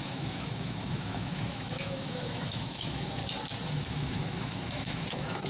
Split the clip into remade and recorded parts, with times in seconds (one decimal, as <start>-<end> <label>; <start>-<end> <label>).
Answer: 0.0-3.2 remade; 3.2-3.7 recorded; 3.7-5.5 remade